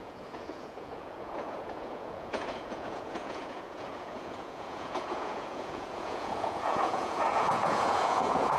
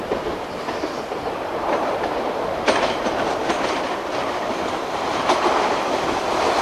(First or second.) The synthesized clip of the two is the first